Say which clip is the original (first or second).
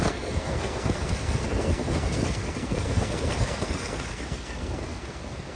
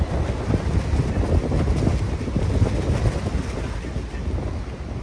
second